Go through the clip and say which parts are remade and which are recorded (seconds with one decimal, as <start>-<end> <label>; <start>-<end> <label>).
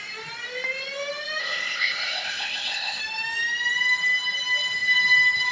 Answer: 0.0-1.4 recorded; 1.4-3.0 remade; 3.0-5.5 recorded